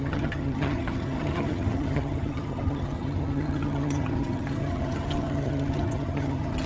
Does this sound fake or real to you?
fake